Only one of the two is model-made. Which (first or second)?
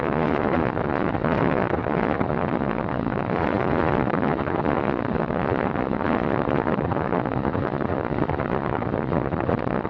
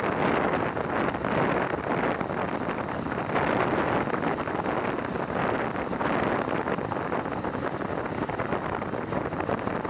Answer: first